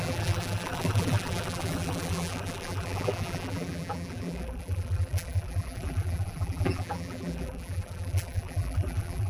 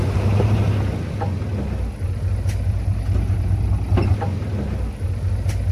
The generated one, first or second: first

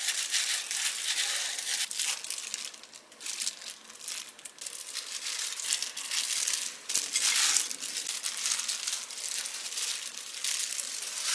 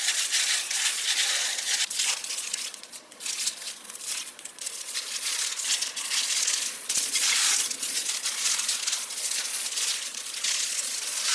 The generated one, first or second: second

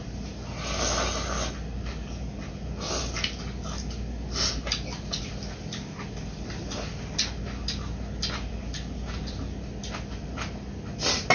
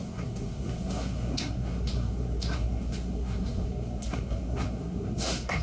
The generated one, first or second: second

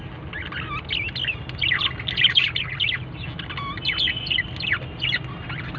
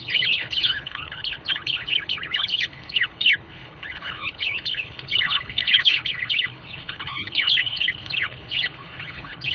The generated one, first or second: second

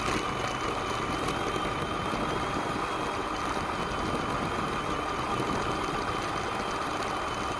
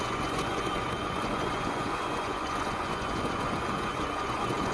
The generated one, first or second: second